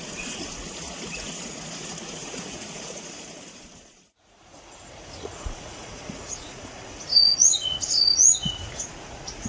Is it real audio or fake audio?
fake